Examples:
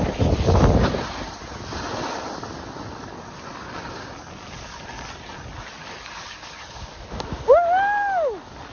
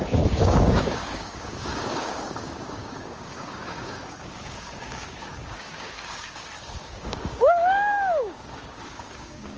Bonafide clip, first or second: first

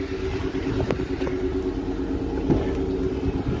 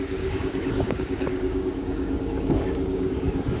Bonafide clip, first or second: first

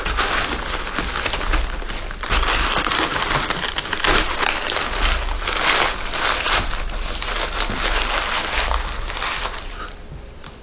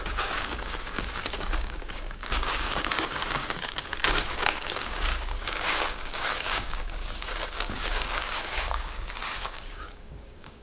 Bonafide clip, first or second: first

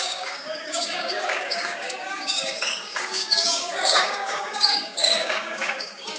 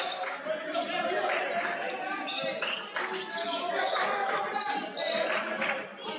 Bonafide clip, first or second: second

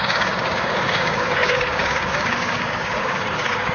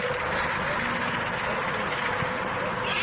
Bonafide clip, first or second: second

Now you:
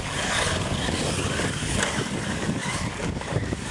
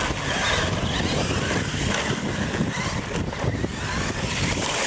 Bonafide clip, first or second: second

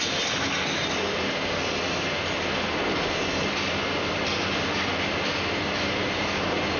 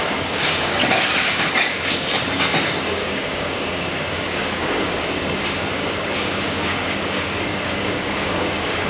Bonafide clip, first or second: first